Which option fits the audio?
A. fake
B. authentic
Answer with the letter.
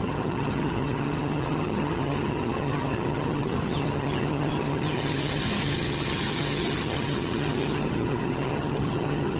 A